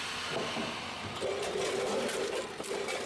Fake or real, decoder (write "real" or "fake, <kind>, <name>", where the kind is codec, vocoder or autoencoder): real